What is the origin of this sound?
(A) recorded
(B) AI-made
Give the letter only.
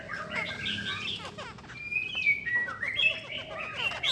A